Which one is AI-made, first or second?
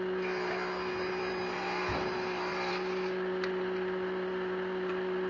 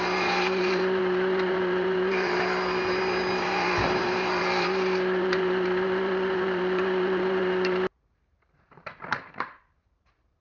second